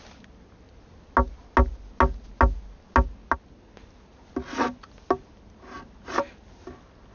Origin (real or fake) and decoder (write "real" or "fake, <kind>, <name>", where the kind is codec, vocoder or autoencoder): real